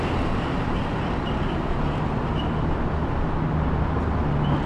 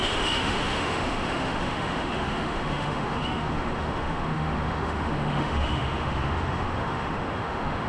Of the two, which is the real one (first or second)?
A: first